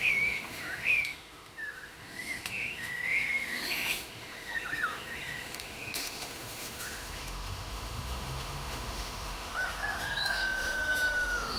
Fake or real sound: fake